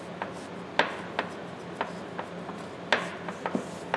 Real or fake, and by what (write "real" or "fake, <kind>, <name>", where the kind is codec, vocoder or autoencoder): real